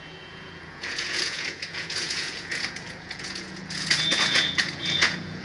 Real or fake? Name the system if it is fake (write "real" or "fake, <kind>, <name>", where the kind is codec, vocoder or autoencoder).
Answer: fake, vocoder, Vocos